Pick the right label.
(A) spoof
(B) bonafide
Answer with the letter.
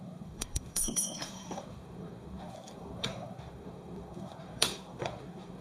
A